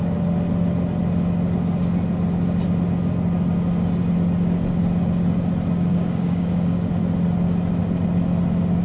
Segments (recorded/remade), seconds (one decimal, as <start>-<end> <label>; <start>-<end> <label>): 0.0-5.9 recorded; 5.9-6.9 remade; 6.9-8.8 recorded